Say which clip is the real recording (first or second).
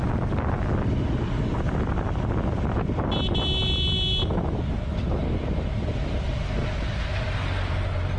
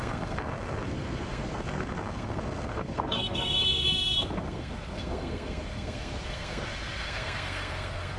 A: first